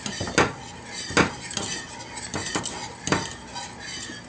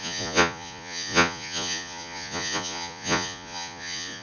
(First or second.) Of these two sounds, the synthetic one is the second